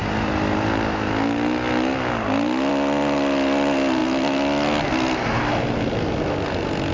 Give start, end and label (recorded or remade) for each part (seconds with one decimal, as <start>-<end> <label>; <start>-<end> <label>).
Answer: 0.0-6.9 recorded